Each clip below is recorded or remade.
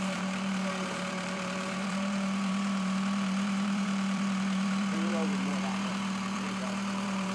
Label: remade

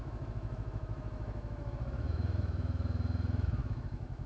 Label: remade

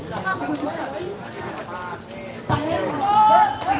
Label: recorded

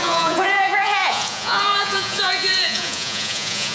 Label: remade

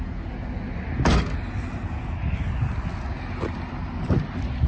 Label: recorded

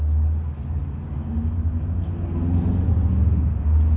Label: recorded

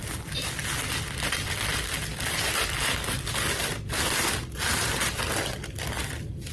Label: recorded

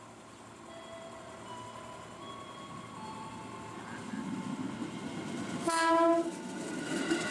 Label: recorded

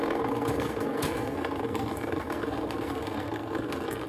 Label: remade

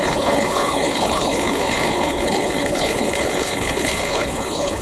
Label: remade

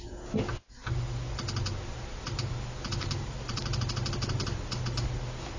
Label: recorded